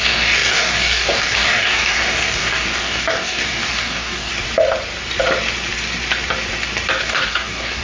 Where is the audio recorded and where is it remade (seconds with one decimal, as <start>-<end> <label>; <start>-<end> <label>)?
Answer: 0.0-4.3 remade; 4.3-7.0 recorded; 7.0-7.8 remade